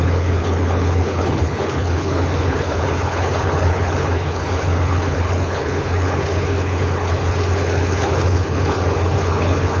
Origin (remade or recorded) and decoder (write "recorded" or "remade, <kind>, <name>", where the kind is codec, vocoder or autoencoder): remade, codec, HILCodec